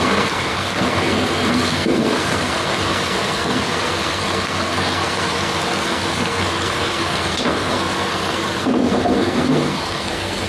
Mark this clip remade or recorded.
remade